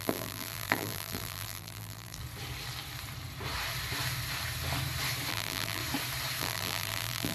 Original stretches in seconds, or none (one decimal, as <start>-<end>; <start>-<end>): 2.2-5.3; 5.8-6.4